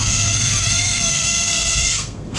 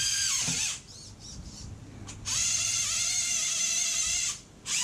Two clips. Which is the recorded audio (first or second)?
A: second